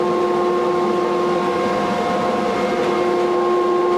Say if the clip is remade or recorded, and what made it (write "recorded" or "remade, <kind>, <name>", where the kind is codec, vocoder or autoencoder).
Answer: recorded